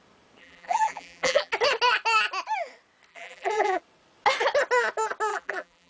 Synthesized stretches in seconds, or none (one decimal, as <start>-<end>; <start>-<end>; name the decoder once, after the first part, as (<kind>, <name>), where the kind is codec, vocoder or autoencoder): 0.4-1.5 (vocoder, BigVGAN v2); 3.1-3.8; 5.3-5.9